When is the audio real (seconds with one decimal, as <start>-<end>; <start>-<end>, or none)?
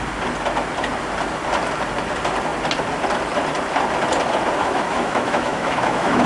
0.0-4.6